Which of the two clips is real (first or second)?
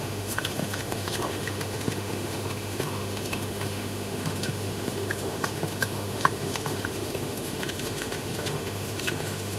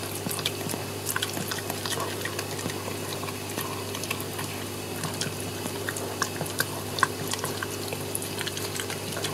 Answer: second